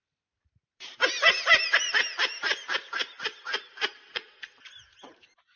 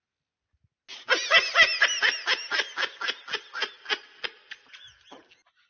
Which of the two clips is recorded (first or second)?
second